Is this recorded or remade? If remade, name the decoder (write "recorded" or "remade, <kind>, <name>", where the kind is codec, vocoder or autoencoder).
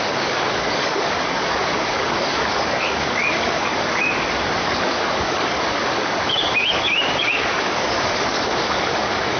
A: remade, codec, DAC